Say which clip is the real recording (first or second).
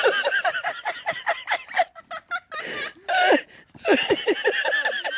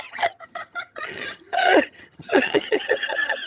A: first